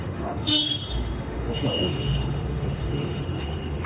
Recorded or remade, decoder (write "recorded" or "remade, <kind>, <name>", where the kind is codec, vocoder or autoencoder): remade, autoencoder, DAC-VAE